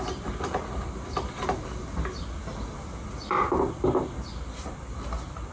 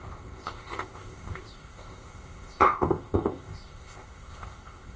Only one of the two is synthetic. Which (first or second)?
second